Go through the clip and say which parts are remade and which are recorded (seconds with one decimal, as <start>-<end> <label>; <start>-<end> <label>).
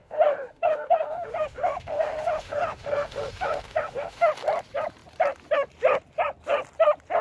0.0-4.3 remade; 4.3-7.2 recorded